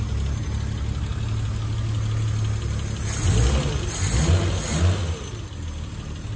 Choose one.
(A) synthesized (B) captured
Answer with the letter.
B